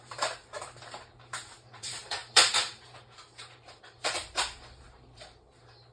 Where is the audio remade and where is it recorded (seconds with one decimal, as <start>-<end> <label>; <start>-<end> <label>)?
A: 0.0-5.9 remade